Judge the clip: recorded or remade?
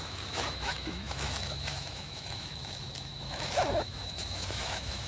remade